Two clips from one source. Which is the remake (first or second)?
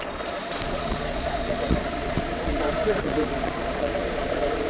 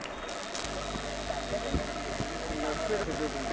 first